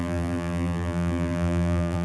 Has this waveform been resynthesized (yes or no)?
yes